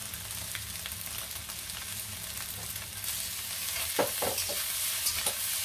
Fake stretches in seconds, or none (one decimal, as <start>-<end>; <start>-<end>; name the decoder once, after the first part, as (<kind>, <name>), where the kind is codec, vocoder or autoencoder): none